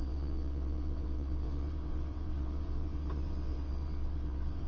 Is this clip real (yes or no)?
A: no